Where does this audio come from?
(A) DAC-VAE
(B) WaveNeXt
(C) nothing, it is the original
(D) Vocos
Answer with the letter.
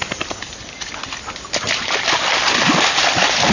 C